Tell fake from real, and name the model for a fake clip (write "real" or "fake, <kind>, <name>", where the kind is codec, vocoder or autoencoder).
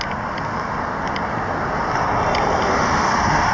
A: real